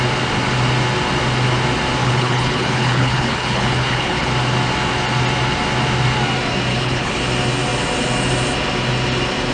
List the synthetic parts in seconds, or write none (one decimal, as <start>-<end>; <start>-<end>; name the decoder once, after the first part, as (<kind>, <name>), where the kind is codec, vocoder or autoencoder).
2.0-4.3 (codec, HILCodec); 6.7-7.2